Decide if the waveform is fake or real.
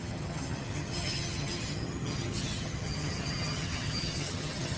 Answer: fake